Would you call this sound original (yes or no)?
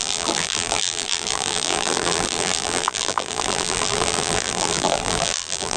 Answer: no